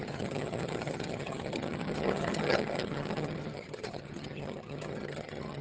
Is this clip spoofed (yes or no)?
yes